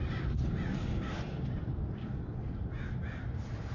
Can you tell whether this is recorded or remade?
recorded